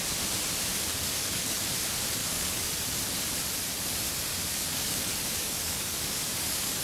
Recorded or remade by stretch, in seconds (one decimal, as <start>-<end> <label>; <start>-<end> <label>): 0.0-0.7 recorded; 0.7-1.6 remade; 1.6-2.2 recorded; 2.2-2.7 remade; 2.7-4.3 recorded; 4.3-6.8 remade